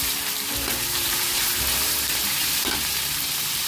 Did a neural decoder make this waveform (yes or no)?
yes